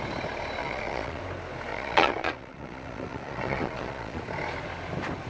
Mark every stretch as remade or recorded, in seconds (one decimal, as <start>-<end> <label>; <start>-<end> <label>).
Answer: 0.0-0.6 recorded; 0.6-1.2 remade; 1.2-1.7 recorded; 1.7-4.2 remade; 4.2-5.3 recorded